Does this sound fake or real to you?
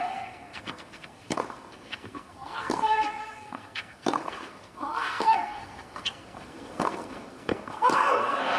fake